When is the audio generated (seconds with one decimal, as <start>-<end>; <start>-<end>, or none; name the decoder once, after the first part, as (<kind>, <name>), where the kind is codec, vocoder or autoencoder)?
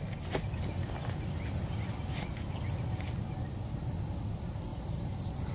4.7-5.5 (vocoder, BigVGAN v2)